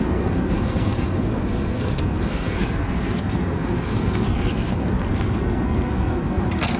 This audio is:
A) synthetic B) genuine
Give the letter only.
A